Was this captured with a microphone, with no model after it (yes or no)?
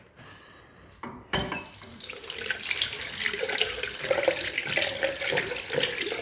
yes